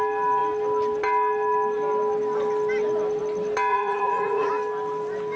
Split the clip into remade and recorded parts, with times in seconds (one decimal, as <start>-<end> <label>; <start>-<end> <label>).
0.0-3.7 recorded; 3.7-4.5 remade; 4.5-5.4 recorded

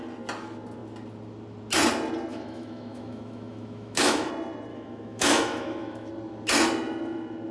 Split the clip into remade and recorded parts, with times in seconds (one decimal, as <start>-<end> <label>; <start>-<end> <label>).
0.0-2.3 recorded; 2.3-4.3 remade; 4.3-4.7 recorded; 4.7-6.1 remade; 6.1-7.5 recorded

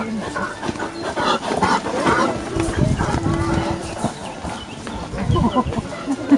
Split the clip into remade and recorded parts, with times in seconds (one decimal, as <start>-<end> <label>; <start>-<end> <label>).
0.0-6.4 recorded

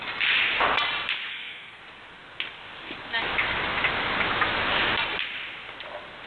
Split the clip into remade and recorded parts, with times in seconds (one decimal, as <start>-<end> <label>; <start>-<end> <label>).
0.0-1.3 recorded; 1.3-1.8 remade; 1.8-6.3 recorded